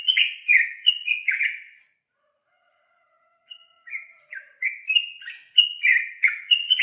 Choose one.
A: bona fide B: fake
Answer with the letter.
B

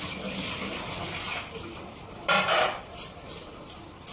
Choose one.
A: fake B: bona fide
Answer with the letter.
B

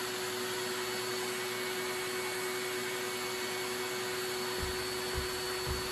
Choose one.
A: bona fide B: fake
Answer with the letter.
A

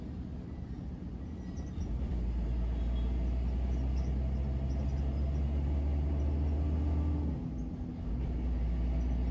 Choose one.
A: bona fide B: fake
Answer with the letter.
A